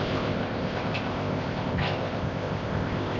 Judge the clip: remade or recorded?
remade